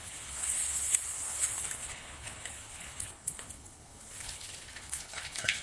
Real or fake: fake